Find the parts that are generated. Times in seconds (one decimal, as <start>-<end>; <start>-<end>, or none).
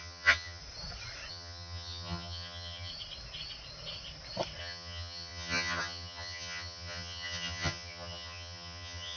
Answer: 0.0-0.6; 1.3-2.9; 4.6-9.2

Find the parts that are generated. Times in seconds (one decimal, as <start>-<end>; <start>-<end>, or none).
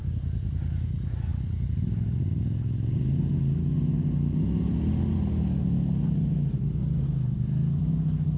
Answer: none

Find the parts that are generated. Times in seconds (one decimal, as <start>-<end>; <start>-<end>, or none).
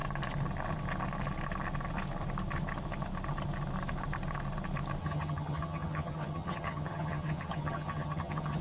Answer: 5.0-8.6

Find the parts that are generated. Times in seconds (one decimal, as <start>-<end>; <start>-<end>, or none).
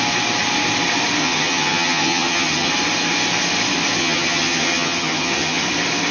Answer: 1.2-2.7; 4.0-5.6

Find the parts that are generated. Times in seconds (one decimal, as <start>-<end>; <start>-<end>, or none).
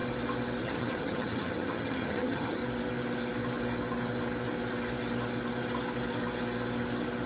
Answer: 0.6-2.6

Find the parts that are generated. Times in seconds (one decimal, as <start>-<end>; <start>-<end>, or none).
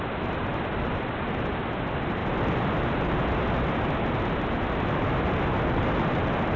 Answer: none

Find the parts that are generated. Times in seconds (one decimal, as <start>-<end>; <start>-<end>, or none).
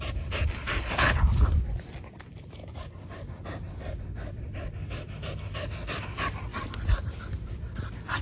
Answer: none